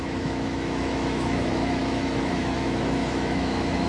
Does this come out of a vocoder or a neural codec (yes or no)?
yes